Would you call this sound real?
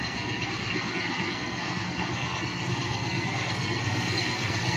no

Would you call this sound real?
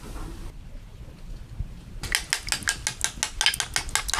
yes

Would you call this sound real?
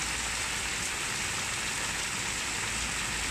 yes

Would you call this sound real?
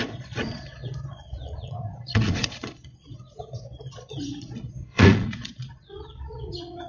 no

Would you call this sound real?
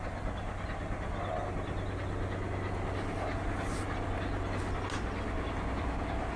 yes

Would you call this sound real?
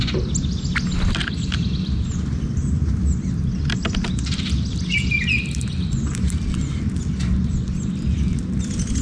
yes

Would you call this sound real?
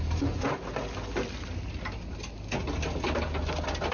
yes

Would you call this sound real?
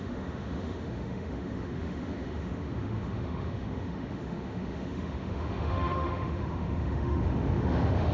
no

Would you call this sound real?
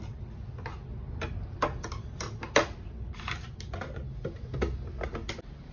yes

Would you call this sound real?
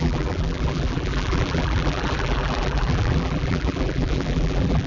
no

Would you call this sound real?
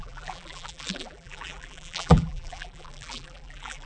no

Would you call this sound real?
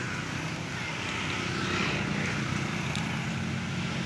yes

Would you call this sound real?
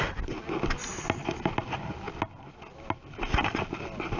yes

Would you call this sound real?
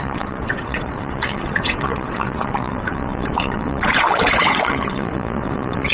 no